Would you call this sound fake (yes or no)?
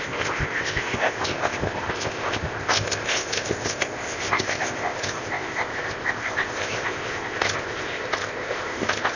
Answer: yes